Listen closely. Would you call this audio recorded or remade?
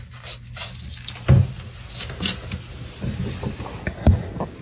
recorded